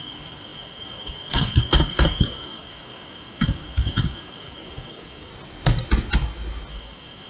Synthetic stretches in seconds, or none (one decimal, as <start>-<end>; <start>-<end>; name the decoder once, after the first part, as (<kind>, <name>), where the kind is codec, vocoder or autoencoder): 0.0-5.3 (codec, DAC); 6.7-7.3